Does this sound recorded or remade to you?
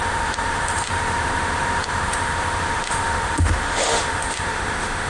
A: remade